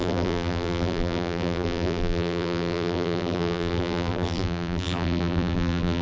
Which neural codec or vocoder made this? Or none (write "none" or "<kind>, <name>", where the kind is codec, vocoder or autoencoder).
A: vocoder, BigVGAN v2